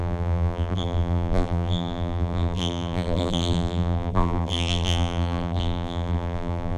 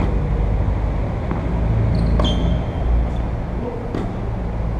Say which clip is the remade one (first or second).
first